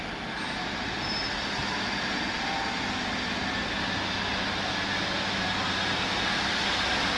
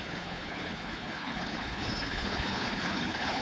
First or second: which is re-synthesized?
second